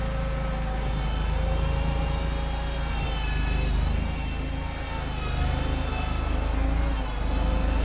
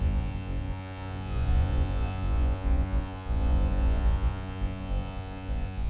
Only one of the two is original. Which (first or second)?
first